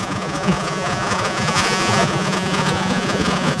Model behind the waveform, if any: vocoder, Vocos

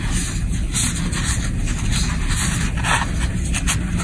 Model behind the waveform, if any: none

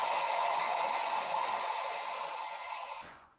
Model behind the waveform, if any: vocoder, Vocos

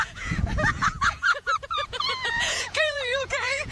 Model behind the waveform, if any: vocoder, Vocos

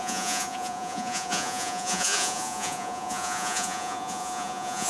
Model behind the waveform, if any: vocoder, Vocos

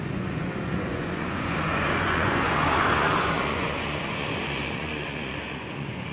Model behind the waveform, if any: vocoder, Vocos